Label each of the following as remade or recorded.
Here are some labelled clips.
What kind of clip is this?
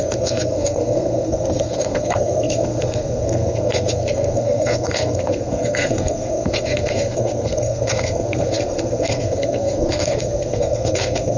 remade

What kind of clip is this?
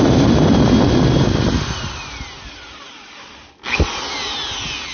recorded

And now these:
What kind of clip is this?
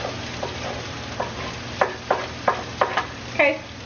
recorded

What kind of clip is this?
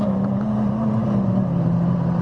recorded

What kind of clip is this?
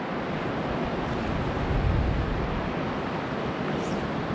recorded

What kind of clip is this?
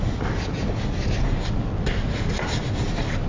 recorded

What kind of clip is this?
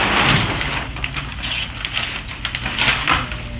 recorded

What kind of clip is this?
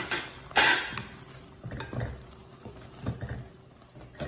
recorded